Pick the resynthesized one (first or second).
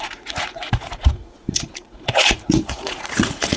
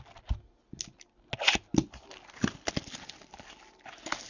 first